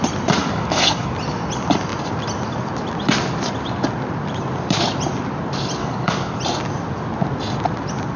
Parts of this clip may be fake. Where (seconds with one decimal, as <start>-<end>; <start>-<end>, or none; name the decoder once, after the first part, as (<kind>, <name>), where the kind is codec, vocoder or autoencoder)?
0.4-1.1 (codec, DAC); 5.8-6.4